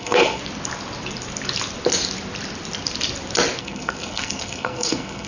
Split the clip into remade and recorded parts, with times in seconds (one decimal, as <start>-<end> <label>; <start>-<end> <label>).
0.0-0.4 remade; 0.4-3.6 recorded; 3.6-5.3 remade